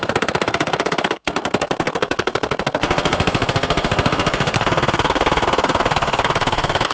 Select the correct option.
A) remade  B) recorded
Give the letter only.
A